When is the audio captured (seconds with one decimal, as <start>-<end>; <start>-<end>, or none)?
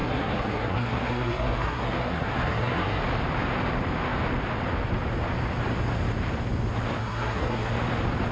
3.0-7.0; 7.7-8.3